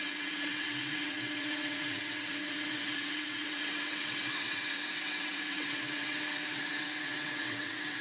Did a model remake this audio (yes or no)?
yes